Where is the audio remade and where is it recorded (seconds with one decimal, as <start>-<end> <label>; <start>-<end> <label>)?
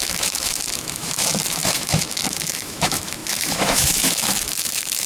0.0-5.1 remade